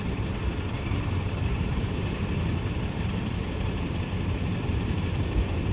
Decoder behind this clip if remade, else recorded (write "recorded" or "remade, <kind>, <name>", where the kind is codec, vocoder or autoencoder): remade, vocoder, BigVGAN v2